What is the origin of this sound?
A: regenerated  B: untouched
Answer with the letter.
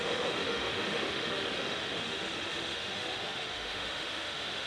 A